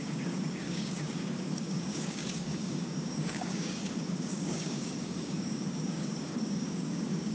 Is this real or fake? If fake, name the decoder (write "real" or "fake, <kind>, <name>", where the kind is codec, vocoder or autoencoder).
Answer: fake, codec, DAC